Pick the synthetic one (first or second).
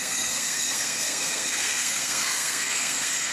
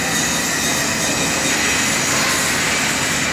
first